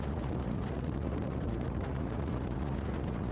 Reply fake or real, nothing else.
fake